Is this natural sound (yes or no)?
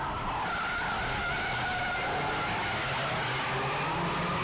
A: yes